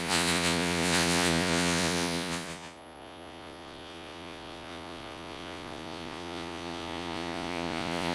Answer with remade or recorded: remade